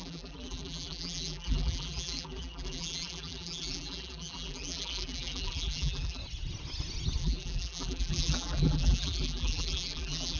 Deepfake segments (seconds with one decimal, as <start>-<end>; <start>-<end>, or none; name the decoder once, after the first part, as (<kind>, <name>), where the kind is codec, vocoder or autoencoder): 0.0-6.2 (vocoder, BigVGAN v2); 7.2-10.4